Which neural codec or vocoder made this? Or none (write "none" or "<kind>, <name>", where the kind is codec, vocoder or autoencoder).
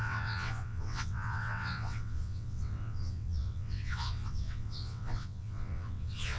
vocoder, WaveNeXt